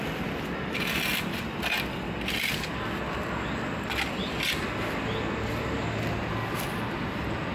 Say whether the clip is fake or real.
real